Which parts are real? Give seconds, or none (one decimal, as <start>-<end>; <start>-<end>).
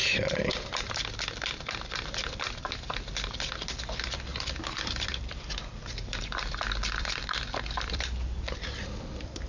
0.5-4.3